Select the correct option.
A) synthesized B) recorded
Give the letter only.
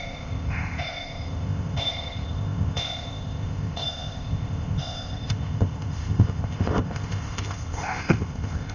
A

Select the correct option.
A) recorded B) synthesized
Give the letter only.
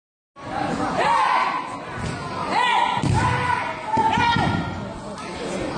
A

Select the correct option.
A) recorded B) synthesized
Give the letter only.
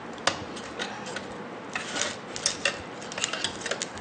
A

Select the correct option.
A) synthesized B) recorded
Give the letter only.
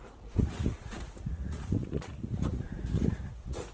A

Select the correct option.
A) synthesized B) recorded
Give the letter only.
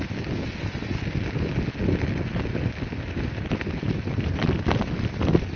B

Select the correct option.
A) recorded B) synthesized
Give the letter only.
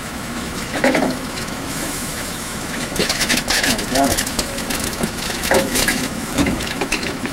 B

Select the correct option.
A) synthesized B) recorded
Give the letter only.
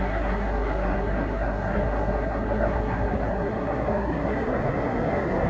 A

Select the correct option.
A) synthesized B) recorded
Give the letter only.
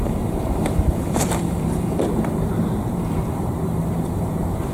A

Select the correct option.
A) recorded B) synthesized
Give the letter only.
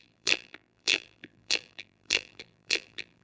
B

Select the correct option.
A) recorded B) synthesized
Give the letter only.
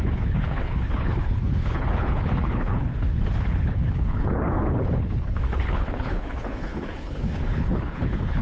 B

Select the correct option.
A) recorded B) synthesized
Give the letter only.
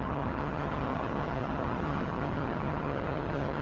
B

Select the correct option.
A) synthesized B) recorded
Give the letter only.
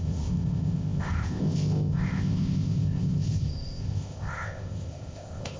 A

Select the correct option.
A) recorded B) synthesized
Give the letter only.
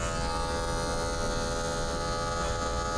A